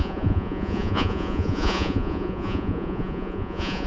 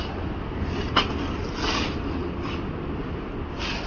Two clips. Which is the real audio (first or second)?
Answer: second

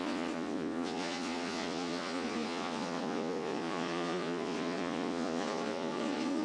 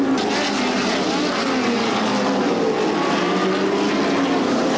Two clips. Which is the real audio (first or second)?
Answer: second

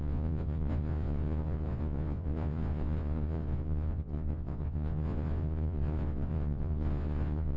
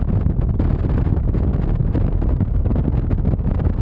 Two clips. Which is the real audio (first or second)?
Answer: second